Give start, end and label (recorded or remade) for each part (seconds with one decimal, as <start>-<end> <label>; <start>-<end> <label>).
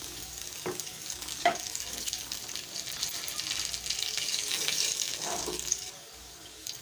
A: 0.0-2.4 remade; 2.4-4.0 recorded; 4.0-6.8 remade